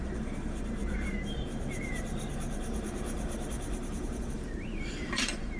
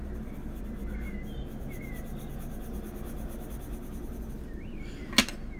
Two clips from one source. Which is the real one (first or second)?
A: second